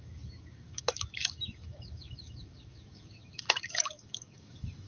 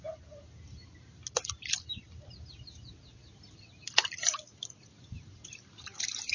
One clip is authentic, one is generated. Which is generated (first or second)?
first